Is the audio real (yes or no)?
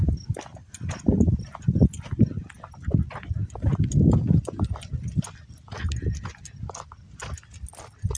yes